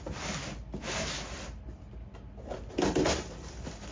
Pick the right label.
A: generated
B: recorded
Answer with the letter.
B